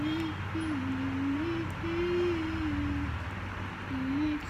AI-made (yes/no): no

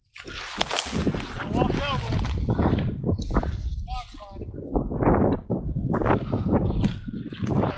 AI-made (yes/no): no